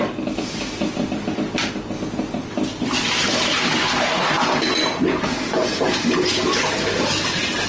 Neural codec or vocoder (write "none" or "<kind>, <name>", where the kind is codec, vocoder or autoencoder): none